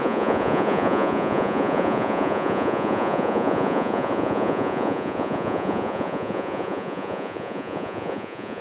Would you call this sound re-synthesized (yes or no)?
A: yes